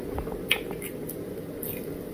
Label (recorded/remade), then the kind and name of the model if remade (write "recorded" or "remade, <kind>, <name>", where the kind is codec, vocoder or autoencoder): recorded